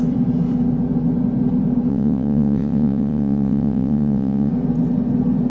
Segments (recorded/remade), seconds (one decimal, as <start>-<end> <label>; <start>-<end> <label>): 0.0-1.9 recorded; 1.9-4.5 remade; 4.5-5.5 recorded